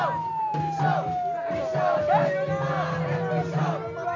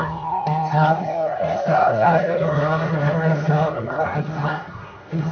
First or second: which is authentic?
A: first